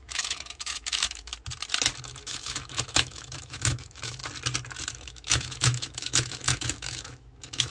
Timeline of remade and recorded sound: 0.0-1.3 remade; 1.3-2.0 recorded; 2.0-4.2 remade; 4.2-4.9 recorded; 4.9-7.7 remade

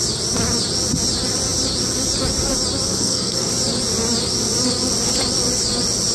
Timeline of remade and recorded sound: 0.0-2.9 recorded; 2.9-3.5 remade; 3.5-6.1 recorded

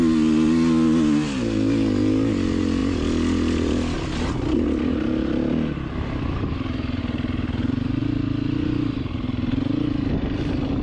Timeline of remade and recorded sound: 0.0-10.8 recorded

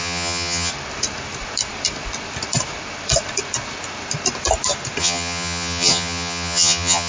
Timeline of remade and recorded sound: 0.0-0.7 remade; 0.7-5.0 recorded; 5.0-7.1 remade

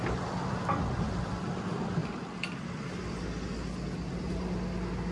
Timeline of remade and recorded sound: 0.0-5.1 recorded

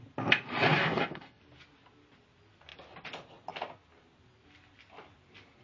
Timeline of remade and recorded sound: 0.0-0.8 recorded; 0.8-1.4 remade; 1.4-5.6 recorded

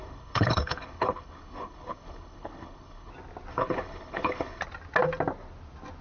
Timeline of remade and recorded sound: 0.0-3.1 remade; 3.1-3.5 recorded; 3.5-4.6 remade; 4.6-6.0 recorded